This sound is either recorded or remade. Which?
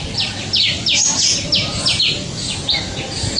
recorded